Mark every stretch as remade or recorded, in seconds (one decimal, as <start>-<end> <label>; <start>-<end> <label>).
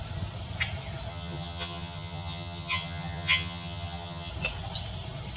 0.0-1.1 recorded; 1.1-4.3 remade; 4.3-5.4 recorded